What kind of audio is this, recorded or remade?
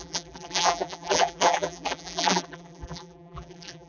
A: remade